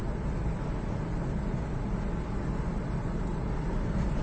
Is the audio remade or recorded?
recorded